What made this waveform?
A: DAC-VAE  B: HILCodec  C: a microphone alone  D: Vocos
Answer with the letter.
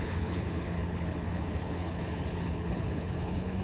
B